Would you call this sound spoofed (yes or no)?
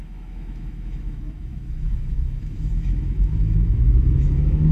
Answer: yes